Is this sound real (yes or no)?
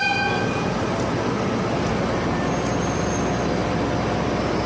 yes